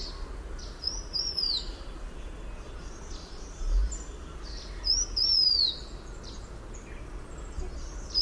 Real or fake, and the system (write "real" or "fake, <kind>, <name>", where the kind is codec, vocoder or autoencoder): real